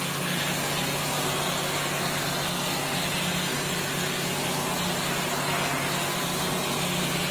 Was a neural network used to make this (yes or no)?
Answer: no